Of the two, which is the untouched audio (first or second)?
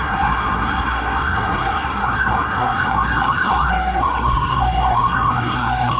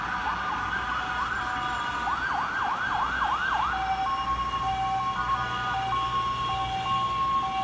second